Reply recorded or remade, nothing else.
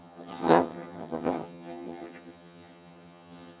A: remade